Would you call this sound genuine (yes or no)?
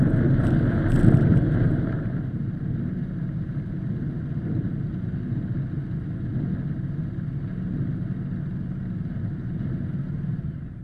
yes